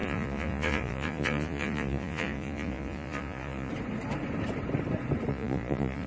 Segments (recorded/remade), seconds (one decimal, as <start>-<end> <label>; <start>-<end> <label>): 0.0-3.7 remade; 3.7-5.3 recorded; 5.3-6.1 remade

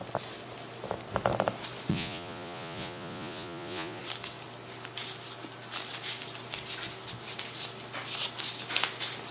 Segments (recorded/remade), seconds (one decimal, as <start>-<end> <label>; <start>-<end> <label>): 0.0-1.9 recorded; 1.9-4.0 remade; 4.0-9.3 recorded